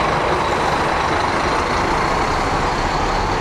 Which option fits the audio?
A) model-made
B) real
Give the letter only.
A